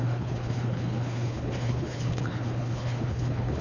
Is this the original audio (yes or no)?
no